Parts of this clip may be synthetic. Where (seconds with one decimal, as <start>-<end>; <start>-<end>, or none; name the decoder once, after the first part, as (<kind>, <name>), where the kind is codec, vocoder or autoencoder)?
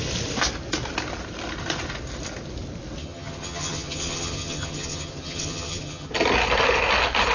3.0-6.1 (vocoder, HiFi-GAN)